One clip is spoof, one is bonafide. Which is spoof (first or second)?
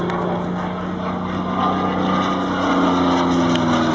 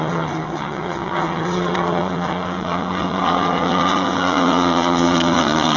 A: second